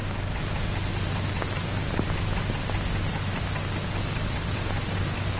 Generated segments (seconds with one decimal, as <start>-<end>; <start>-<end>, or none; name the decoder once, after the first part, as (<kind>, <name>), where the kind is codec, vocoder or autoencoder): none